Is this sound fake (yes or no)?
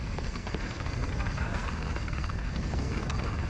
yes